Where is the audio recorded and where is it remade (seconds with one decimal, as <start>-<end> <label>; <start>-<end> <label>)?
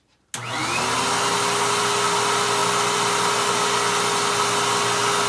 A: 0.0-5.3 recorded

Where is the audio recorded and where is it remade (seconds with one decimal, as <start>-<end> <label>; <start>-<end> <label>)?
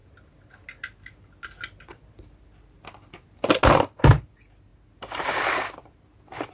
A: 0.0-6.5 recorded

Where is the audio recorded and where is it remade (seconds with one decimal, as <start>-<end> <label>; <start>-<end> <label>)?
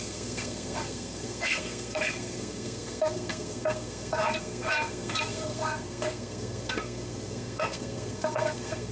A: 0.0-8.9 remade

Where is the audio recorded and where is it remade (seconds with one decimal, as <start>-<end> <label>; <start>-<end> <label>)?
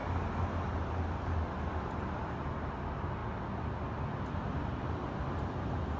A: 0.0-6.0 recorded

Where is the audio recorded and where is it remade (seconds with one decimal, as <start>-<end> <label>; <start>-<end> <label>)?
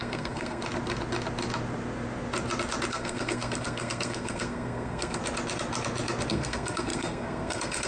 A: 0.0-0.6 remade; 0.6-2.9 recorded; 2.9-5.2 remade; 5.2-6.3 recorded; 6.3-7.9 remade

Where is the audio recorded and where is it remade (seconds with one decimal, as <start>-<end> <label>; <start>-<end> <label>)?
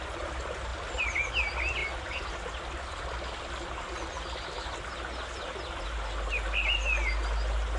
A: 0.0-7.8 recorded